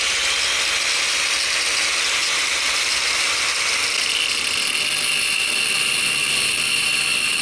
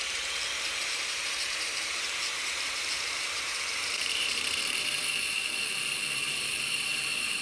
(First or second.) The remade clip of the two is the second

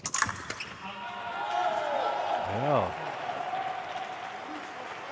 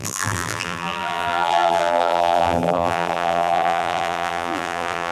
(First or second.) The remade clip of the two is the second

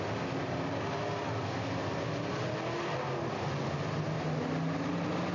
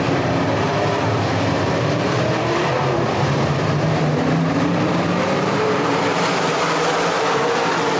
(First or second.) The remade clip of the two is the second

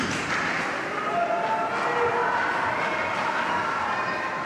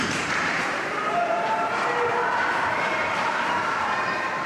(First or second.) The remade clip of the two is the second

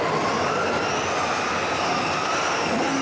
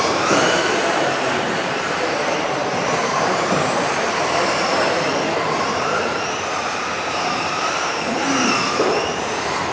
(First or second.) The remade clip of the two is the second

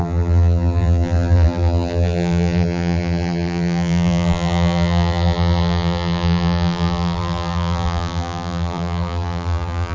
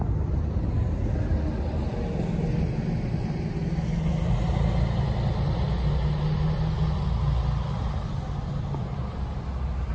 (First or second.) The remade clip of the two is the first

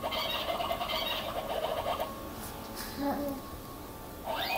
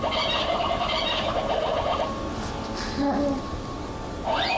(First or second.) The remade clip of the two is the second